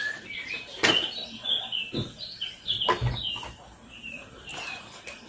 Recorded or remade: recorded